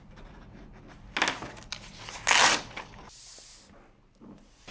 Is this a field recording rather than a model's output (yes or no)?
yes